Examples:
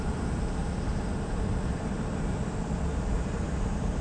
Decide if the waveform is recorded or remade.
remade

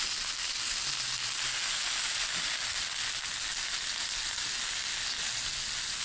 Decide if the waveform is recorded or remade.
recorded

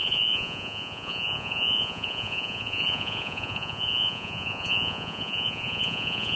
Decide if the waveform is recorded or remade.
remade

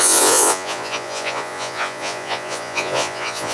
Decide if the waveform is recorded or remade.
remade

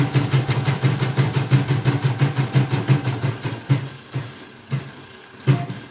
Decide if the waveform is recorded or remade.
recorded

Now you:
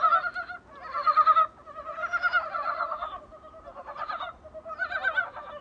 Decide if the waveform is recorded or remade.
recorded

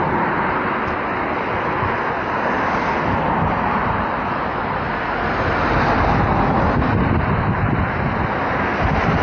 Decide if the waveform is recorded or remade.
recorded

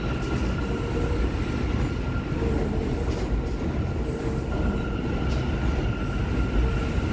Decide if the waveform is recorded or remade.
recorded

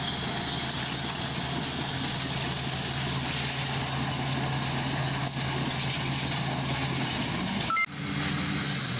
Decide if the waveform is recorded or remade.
recorded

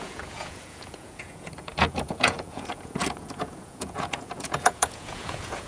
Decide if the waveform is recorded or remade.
remade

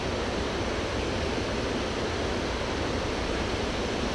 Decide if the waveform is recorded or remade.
recorded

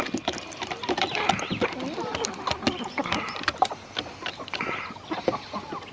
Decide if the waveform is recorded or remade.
recorded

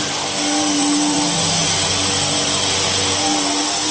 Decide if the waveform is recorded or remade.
remade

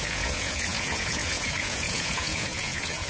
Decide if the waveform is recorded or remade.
remade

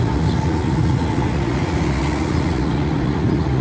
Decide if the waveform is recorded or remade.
remade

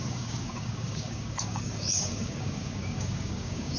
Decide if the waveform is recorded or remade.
remade